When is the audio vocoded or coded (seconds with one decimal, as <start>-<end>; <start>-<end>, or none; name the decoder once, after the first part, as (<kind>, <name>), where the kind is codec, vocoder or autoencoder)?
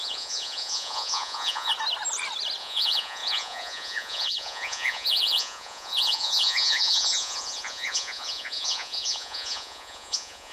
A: 0.0-1.7 (vocoder, Vocos); 2.6-10.5